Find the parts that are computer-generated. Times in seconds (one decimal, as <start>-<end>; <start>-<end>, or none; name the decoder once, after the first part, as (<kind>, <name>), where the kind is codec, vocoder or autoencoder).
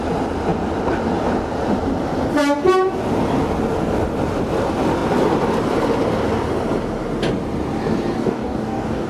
8.2-9.1 (codec, DAC)